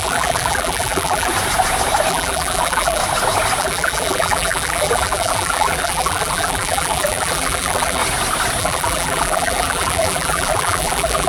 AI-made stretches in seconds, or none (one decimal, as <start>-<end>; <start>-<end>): 0.0-1.3; 2.1-3.0; 3.6-8.0; 8.6-11.3